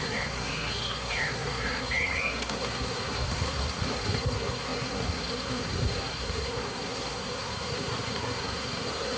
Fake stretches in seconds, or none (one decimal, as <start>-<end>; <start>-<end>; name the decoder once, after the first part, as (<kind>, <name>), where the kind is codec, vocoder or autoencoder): 0.0-9.2 (codec, SNAC)